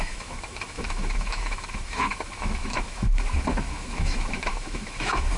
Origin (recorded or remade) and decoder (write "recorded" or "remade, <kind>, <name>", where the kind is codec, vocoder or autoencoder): remade, autoencoder, DAC-VAE